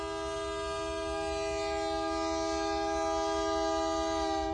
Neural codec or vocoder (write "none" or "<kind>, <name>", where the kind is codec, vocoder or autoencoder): none